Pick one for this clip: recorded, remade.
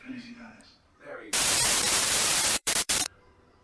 remade